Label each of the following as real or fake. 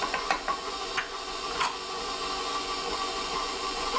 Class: fake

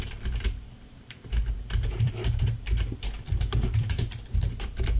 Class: fake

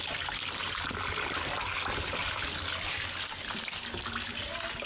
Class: real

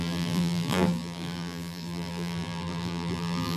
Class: fake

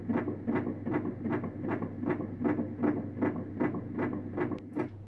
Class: real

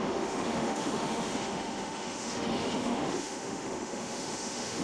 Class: fake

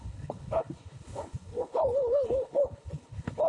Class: fake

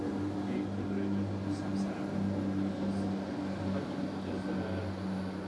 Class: real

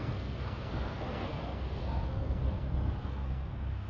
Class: fake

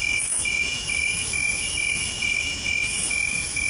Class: fake